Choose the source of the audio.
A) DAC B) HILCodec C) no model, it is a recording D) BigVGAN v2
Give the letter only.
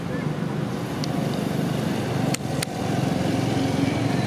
C